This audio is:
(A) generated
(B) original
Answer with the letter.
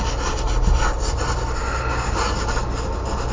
B